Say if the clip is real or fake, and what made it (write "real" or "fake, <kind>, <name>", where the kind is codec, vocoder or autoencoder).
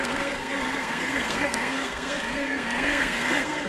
fake, codec, SNAC